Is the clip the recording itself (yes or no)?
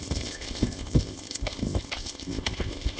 no